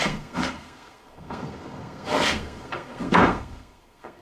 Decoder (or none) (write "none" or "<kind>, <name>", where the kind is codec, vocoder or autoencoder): codec, SNAC